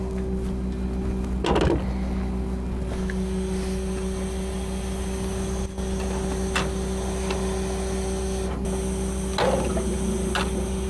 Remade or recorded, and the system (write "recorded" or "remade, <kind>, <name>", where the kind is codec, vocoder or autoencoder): recorded